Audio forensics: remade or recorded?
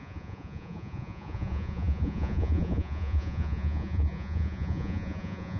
remade